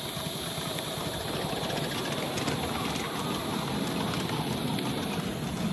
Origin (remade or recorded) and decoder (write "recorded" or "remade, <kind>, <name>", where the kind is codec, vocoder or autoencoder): recorded